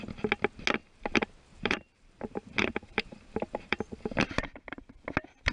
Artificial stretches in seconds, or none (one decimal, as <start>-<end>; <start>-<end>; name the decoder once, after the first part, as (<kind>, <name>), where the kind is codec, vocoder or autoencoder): 1.5-4.8 (vocoder, BigVGAN v2)